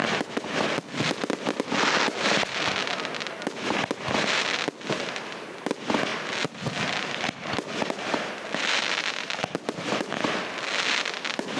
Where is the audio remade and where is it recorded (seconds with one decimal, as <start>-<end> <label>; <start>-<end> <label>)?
0.0-11.6 recorded